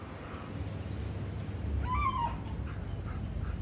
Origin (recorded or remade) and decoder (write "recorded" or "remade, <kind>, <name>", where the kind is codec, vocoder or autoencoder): recorded